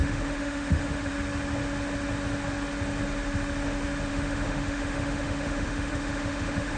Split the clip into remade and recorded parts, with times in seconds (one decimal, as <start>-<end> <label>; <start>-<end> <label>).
0.0-1.1 remade; 1.1-4.1 recorded; 4.1-6.8 remade